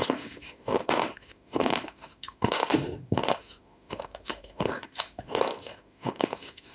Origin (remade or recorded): remade